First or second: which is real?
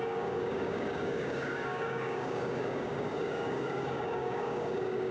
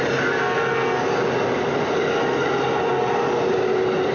second